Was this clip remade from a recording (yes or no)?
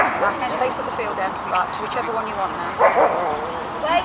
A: no